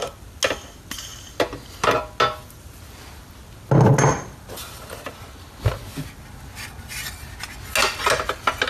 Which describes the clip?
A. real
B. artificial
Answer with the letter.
A